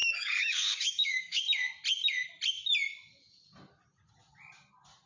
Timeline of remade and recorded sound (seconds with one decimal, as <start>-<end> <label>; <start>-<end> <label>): 0.0-1.4 remade; 1.4-5.1 recorded